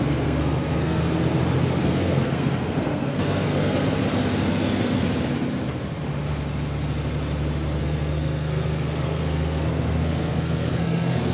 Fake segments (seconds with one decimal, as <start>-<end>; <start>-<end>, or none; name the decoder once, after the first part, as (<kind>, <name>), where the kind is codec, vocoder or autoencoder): 0.0-1.0 (codec, SNAC); 1.8-4.0; 4.5-5.0; 7.8-11.3